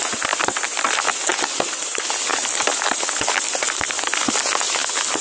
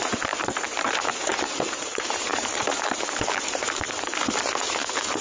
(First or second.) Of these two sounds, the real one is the first